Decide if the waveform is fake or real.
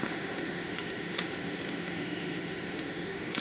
fake